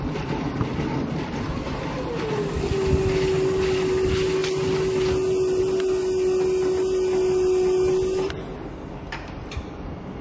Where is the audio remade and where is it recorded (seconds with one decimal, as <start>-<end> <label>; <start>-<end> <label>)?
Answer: 0.0-10.2 recorded